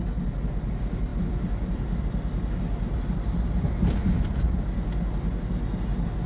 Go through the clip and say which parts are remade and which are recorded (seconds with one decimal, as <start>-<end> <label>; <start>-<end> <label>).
0.0-6.3 recorded

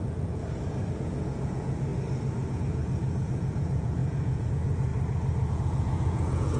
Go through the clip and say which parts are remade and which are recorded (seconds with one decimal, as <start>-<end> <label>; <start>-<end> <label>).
0.0-0.4 remade; 0.4-0.9 recorded; 0.9-1.9 remade; 1.9-2.5 recorded; 2.5-4.9 remade; 4.9-5.5 recorded; 5.5-6.6 remade